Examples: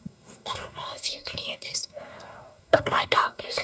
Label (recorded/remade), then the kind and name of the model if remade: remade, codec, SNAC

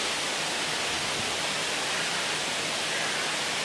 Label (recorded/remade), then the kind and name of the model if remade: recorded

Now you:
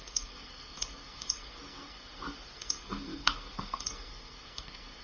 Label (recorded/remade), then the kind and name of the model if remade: remade, codec, SNAC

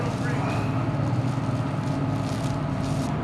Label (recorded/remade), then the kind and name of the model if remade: recorded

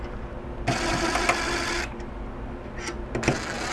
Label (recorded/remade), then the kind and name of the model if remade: recorded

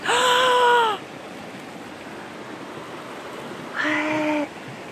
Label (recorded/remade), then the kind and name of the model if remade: recorded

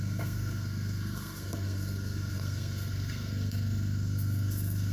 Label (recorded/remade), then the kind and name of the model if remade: remade, codec, SNAC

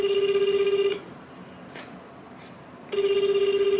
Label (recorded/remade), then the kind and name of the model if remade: recorded